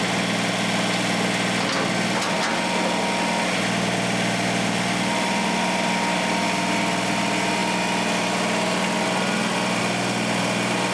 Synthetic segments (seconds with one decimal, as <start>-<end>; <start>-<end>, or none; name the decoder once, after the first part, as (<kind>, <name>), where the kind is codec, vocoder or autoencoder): none